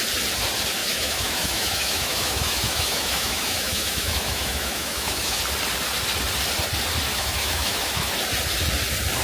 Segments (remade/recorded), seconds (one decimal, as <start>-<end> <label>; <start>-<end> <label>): 0.0-0.8 recorded; 0.8-5.4 remade; 5.4-7.1 recorded; 7.1-8.1 remade; 8.1-9.2 recorded